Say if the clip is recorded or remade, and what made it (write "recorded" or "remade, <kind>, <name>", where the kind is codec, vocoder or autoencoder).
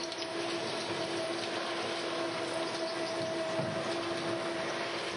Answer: recorded